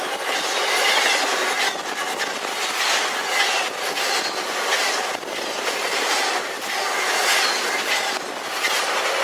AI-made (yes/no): no